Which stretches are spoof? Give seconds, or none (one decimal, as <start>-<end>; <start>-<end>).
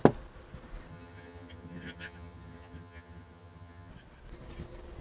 0.9-3.9